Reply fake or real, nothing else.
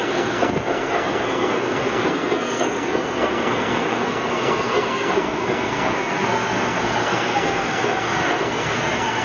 fake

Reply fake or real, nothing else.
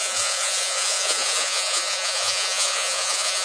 fake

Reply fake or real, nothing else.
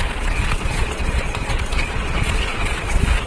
fake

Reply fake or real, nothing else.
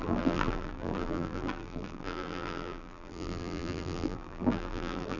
fake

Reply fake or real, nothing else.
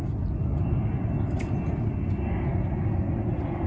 real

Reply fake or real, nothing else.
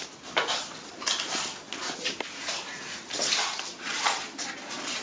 real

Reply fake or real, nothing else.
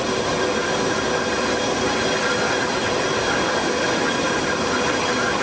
real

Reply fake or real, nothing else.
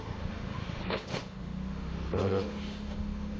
fake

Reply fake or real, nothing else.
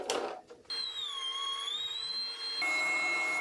real